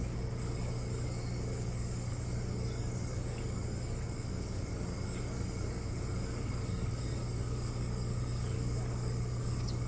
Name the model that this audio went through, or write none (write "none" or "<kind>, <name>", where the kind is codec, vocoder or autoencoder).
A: codec, DAC